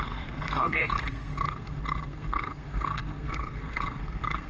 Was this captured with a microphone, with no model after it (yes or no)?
no